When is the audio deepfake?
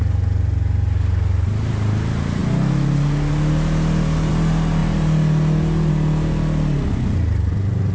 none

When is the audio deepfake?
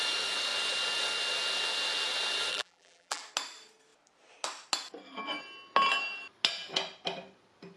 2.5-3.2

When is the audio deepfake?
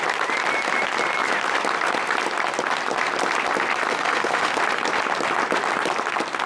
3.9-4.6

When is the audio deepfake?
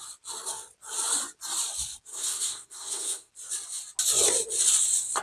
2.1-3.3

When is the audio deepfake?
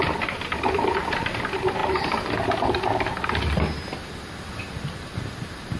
none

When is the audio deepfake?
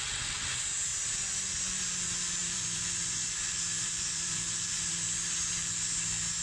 0.9-1.8; 2.4-5.5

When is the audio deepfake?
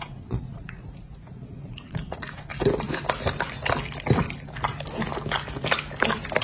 0.0-2.5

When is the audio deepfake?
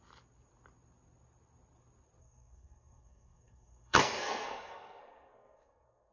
2.2-6.1